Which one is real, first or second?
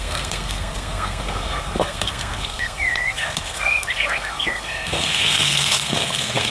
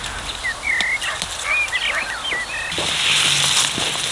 second